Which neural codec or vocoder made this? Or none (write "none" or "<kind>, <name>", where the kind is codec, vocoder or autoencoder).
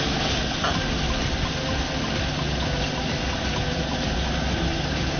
none